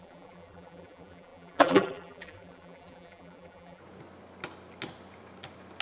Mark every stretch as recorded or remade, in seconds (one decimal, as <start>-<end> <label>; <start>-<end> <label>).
0.0-3.8 remade; 3.8-5.8 recorded